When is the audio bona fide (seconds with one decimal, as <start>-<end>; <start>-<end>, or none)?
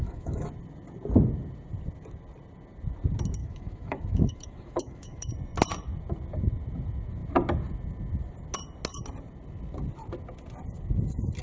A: 0.5-3.4; 5.3-11.4